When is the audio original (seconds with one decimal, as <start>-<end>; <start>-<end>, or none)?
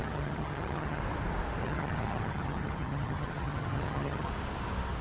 1.0-1.6; 4.3-5.0